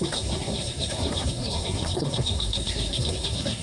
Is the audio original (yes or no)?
no